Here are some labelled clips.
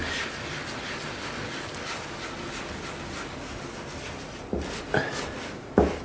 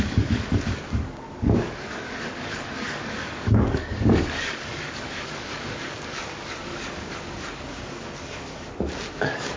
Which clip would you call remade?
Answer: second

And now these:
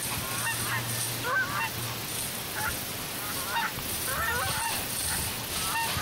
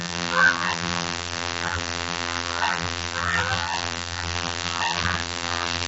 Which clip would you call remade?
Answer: second